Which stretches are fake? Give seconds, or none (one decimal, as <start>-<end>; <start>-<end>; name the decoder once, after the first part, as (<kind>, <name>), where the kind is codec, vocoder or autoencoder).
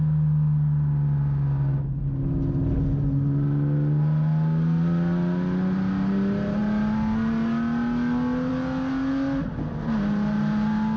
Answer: none